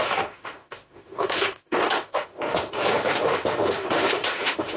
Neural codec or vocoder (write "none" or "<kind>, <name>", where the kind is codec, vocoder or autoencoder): autoencoder, DAC-VAE